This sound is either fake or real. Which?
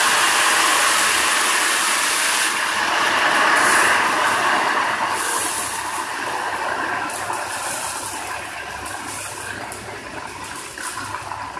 real